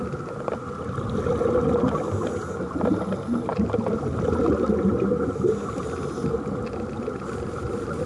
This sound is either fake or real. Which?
real